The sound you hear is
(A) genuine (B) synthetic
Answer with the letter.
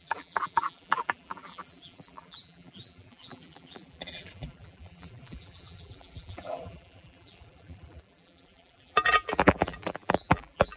B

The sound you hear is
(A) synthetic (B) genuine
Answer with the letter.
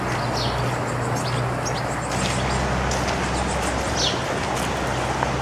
B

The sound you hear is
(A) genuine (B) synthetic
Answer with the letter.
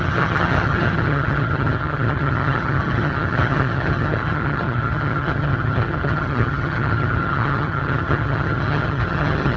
B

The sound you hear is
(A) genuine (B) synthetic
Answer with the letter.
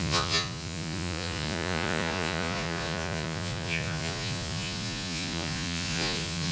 B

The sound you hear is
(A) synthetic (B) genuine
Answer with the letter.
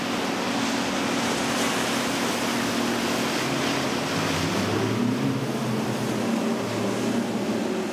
B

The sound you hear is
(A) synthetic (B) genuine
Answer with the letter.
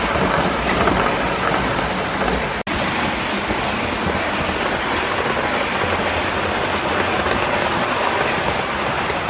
B